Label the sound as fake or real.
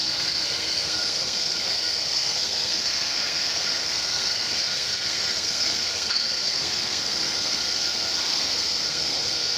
fake